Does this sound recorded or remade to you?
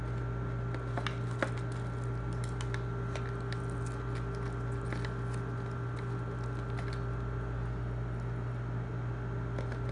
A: recorded